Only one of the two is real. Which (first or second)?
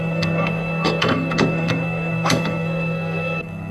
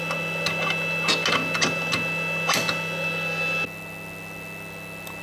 second